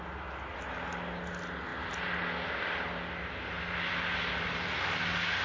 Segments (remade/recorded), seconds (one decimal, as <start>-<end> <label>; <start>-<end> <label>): 0.0-5.4 recorded